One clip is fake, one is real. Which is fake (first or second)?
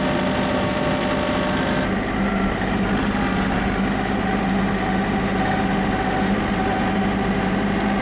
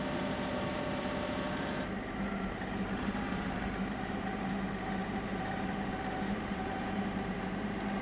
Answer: second